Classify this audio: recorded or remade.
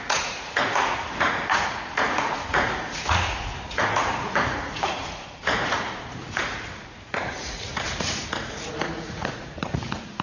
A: remade